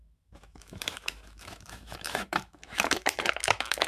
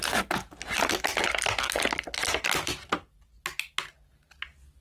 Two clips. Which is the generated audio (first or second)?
first